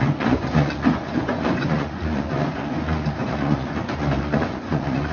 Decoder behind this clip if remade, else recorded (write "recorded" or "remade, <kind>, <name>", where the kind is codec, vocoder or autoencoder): remade, vocoder, Vocos